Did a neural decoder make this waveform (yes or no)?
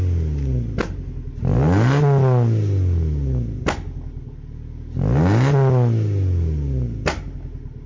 no